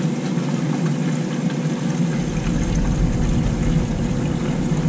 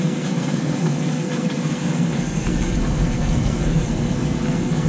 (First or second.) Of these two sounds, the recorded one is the first